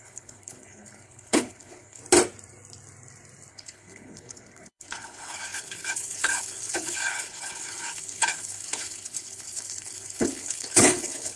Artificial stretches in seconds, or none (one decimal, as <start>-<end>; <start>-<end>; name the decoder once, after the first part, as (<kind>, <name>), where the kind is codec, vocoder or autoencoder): 0.0-2.0 (codec, HILCodec); 3.5-11.4